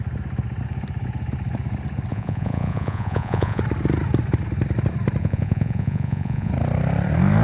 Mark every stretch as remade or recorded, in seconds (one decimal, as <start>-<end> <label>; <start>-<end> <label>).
0.0-2.1 recorded; 2.1-3.6 remade; 3.6-5.2 recorded; 5.2-6.5 remade; 6.5-7.4 recorded